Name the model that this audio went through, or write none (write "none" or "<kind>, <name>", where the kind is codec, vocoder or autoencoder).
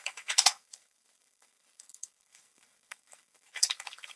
codec, SNAC